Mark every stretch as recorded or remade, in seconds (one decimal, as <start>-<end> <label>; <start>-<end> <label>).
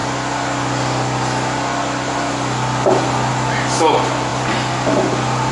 0.0-5.5 recorded